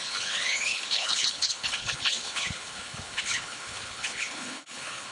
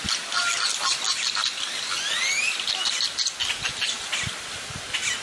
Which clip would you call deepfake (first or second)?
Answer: first